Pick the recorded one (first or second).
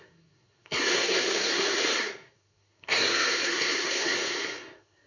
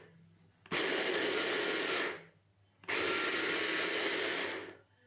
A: second